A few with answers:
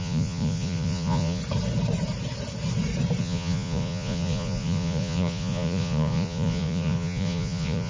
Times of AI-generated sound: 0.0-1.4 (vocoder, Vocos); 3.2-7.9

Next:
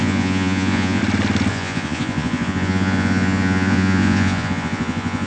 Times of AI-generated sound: 0.0-1.0 (vocoder, Vocos); 1.5-5.3